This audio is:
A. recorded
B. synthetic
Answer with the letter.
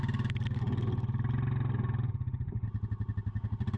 A